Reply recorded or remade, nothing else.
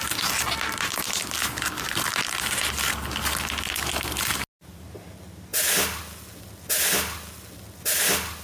recorded